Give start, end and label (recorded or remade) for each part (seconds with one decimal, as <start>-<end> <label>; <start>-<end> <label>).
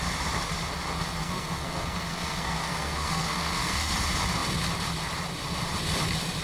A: 0.0-1.2 recorded; 1.2-3.9 remade; 3.9-6.4 recorded